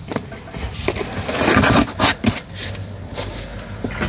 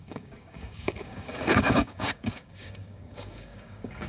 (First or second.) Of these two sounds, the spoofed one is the second